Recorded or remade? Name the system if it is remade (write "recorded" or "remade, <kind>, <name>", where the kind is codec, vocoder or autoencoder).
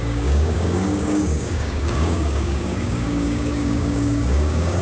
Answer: remade, codec, DAC